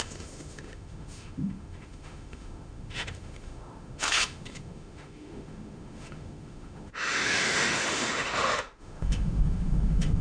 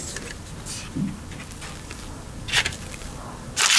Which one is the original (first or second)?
second